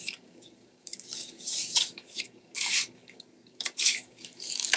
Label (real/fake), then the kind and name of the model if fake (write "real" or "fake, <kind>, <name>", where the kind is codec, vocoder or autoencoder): fake, codec, DAC